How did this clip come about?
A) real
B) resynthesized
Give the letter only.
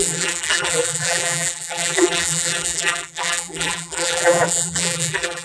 B